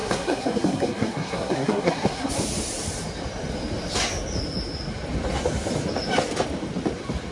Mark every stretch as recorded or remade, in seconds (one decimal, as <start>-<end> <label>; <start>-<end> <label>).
0.0-2.3 remade; 2.3-7.3 recorded